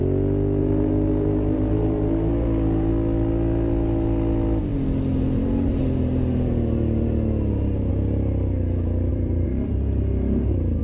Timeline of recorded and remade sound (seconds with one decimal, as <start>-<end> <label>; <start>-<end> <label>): 0.0-0.6 recorded; 0.6-2.9 remade; 2.9-9.1 recorded; 9.1-10.8 remade